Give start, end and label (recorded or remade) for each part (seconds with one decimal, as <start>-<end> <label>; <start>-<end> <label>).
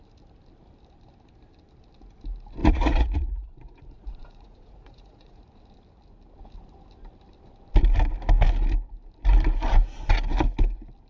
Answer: 0.0-2.6 recorded; 2.6-5.4 remade; 5.4-11.1 recorded